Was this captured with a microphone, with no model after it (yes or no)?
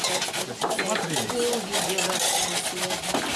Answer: yes